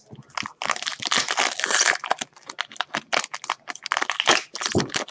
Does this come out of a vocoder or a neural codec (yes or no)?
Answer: no